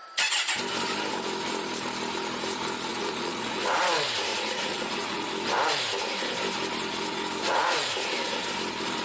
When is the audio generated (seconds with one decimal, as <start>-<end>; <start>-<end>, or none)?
2.9-3.8; 4.3-5.3; 7.4-8.1